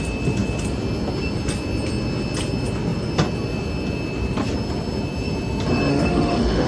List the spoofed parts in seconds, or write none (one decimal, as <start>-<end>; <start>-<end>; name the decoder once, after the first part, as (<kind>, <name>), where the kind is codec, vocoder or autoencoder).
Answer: 5.9-6.7 (autoencoder, DAC-VAE)